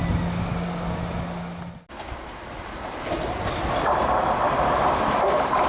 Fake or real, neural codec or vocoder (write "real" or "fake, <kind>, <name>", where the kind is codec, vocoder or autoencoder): real